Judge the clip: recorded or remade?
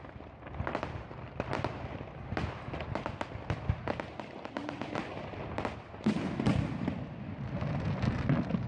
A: remade